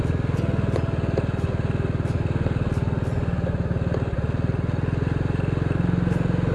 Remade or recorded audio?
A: recorded